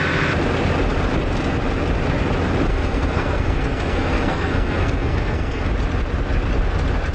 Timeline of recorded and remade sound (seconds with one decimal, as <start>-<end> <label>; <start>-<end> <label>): 0.0-2.7 recorded; 2.7-5.7 remade; 5.7-7.1 recorded